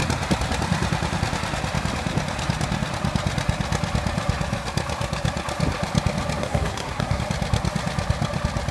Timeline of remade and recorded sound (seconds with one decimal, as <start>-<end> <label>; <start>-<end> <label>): 0.0-6.4 recorded; 6.4-7.2 remade; 7.2-8.7 recorded